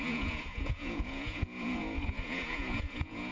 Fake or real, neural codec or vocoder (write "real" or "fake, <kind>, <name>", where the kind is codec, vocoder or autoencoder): fake, vocoder, Vocos